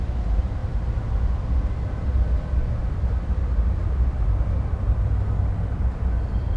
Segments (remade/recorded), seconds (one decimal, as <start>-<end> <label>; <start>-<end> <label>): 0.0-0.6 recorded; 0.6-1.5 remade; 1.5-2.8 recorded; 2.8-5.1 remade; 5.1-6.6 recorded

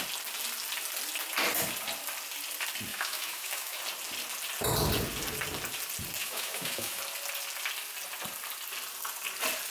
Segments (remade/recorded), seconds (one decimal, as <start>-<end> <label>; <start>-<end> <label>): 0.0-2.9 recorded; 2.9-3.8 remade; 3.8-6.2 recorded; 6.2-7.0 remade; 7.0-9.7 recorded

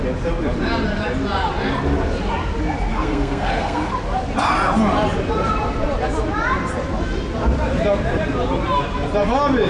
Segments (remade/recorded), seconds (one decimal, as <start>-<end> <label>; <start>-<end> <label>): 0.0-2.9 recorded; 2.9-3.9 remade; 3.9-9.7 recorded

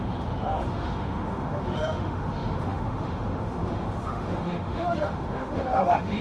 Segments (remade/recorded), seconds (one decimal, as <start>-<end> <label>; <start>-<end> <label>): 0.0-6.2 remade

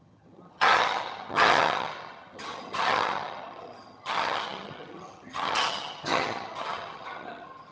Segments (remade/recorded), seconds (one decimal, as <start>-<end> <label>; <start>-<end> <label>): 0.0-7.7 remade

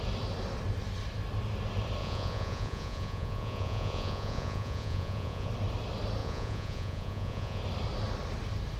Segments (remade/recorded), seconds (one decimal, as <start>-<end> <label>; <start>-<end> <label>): 0.0-2.0 recorded; 2.0-5.5 remade; 5.5-6.2 recorded; 6.2-7.6 remade; 7.6-8.8 recorded